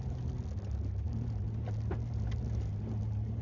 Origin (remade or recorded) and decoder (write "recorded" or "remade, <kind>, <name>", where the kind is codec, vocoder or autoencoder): recorded